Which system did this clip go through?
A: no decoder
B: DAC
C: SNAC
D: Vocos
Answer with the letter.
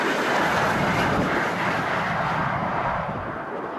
A